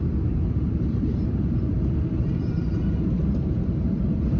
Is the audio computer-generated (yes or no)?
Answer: yes